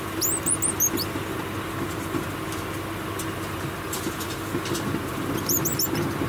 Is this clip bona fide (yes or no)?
yes